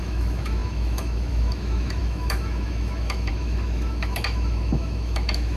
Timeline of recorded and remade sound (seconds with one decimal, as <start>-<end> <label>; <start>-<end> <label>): 0.0-5.6 remade